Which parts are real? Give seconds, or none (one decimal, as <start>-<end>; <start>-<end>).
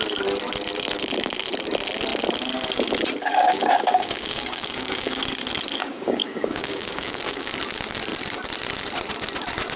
0.0-3.3; 5.2-5.9; 7.5-9.8